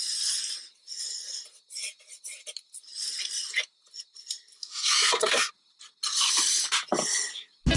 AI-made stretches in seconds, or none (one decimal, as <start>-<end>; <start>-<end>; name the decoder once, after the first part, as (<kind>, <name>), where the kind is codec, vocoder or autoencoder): 4.6-5.5 (codec, SNAC)